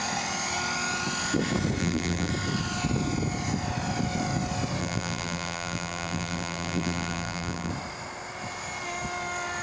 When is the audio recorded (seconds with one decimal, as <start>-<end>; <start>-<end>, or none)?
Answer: 0.0-1.8; 2.3-4.8; 7.7-9.6